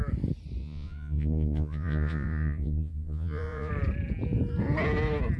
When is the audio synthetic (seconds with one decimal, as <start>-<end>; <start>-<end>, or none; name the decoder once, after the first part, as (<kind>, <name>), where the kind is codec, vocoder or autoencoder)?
0.6-3.7 (vocoder, Vocos)